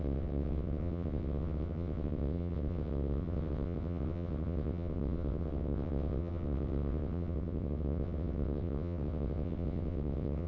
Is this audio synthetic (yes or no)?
yes